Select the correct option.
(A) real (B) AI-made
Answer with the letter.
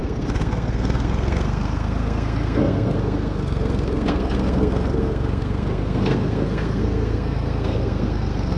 B